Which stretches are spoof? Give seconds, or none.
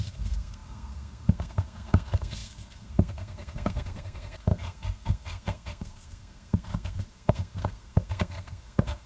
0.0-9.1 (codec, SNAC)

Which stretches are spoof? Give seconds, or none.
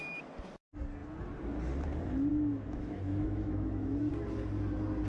2.3-4.1 (autoencoder, DAC-VAE)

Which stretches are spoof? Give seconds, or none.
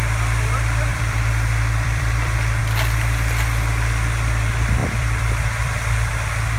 0.9-2.6 (vocoder, BigVGAN v2); 4.8-6.1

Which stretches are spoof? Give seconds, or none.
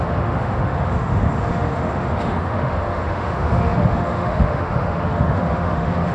0.0-6.1 (autoencoder, DAC-VAE)